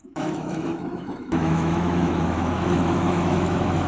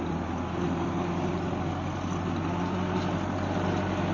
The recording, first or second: second